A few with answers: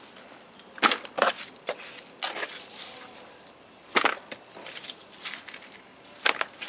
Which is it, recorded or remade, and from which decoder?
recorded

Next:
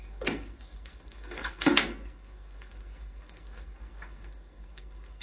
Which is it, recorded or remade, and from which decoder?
remade, codec, SNAC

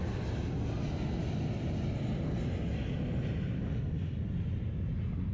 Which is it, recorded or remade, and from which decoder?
recorded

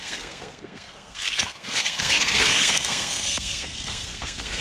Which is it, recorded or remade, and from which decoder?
remade, codec, SNAC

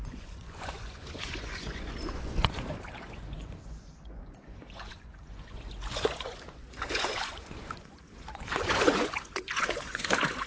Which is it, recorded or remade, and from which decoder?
remade, vocoder, Vocos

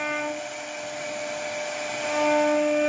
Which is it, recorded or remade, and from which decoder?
recorded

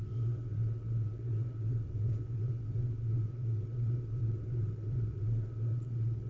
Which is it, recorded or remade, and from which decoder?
remade, vocoder, WaveNeXt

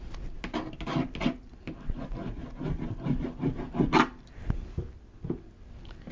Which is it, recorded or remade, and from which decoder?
recorded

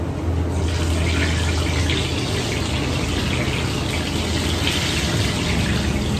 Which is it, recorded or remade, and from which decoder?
recorded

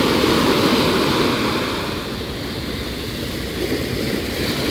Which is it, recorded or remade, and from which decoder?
recorded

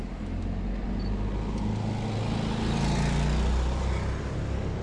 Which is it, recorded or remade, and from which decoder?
recorded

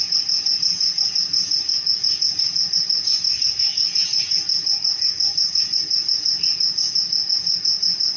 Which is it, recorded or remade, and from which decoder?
remade, vocoder, Vocos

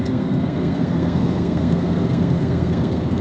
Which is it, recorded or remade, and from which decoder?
remade, codec, SNAC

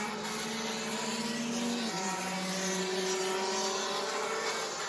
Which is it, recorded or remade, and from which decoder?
recorded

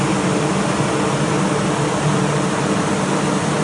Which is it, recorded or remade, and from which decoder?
recorded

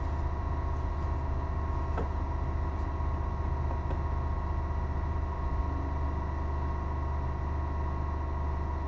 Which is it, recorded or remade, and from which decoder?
recorded